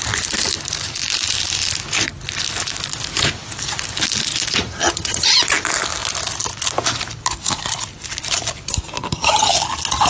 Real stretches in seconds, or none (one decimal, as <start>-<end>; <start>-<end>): 0.0-4.6; 5.4-9.0; 9.5-10.1